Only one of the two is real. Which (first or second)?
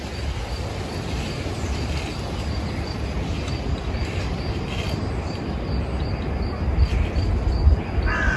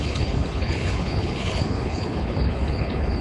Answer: first